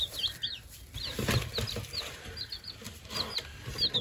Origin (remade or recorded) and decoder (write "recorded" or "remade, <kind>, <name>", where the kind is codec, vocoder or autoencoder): recorded